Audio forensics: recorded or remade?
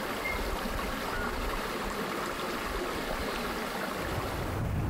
recorded